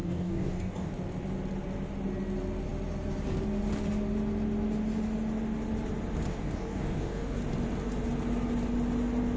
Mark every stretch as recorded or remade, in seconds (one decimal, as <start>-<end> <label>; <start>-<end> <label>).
0.0-0.9 remade; 0.9-6.3 recorded; 6.3-7.4 remade; 7.4-9.4 recorded